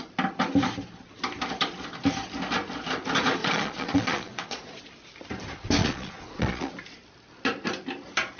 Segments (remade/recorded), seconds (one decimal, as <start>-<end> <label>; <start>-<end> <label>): 0.0-3.4 recorded; 3.4-4.8 remade; 4.8-5.8 recorded; 5.8-6.7 remade; 6.7-8.4 recorded